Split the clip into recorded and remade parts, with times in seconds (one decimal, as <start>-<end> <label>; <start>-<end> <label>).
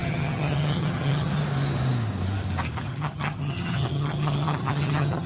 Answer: 0.0-1.3 remade; 1.3-2.9 recorded; 2.9-5.3 remade